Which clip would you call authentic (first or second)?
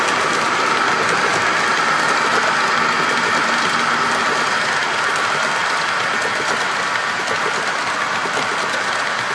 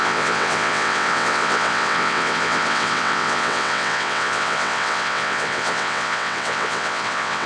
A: first